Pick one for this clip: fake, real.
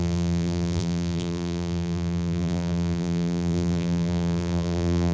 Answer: fake